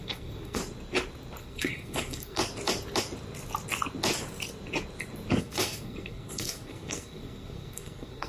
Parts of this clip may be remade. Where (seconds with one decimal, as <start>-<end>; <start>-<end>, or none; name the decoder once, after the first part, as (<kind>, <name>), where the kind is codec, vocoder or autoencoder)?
0.0-0.6 (codec, SNAC); 1.4-2.4; 5.4-8.3